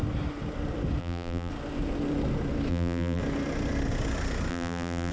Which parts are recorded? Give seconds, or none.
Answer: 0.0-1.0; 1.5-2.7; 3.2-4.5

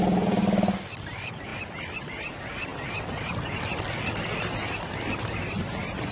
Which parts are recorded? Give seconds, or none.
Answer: 0.0-6.1